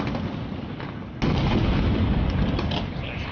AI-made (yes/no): no